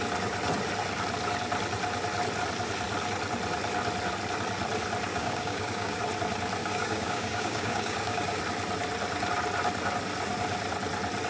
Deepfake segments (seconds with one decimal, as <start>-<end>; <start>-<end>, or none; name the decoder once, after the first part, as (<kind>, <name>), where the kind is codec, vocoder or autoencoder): 5.1-6.0 (codec, DAC); 6.6-8.4